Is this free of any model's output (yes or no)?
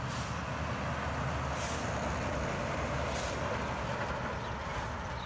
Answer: yes